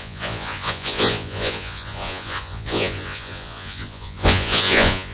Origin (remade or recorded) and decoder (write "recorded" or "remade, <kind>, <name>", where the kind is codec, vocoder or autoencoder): remade, vocoder, Vocos